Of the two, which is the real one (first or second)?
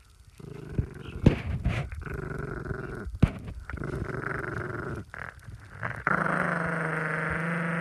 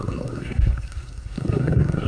first